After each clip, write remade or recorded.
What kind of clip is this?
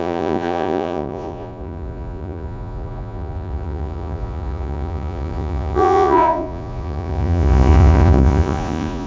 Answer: remade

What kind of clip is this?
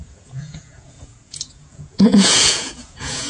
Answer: remade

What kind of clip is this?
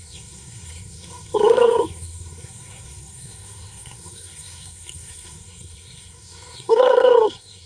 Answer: remade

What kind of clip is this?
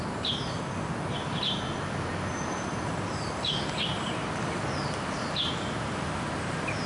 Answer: recorded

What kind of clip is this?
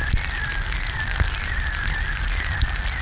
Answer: recorded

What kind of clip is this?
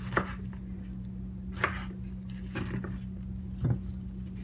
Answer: recorded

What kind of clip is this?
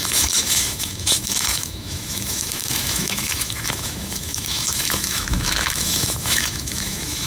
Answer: remade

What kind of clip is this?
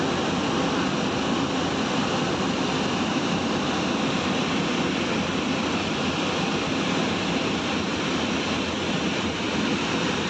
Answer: recorded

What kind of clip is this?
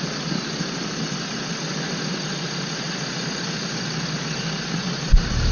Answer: recorded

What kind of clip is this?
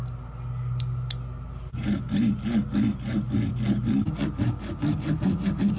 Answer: recorded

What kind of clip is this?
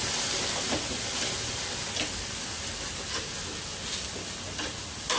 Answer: recorded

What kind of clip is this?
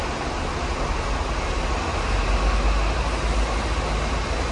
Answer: recorded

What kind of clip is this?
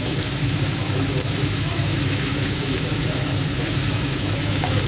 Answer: remade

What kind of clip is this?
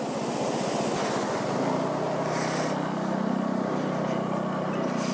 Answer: recorded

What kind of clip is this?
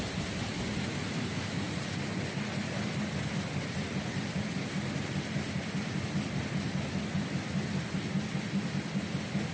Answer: recorded